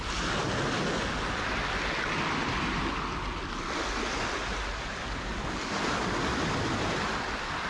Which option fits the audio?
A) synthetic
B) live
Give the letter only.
B